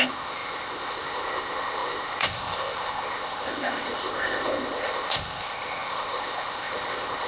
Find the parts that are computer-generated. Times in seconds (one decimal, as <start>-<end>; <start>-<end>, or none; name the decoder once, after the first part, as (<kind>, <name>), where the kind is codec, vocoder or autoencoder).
0.0-7.3 (codec, ZipCodec)